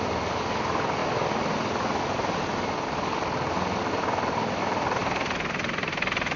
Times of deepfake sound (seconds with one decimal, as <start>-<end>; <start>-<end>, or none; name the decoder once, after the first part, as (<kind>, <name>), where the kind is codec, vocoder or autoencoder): none